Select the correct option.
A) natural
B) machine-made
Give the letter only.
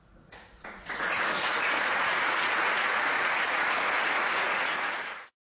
B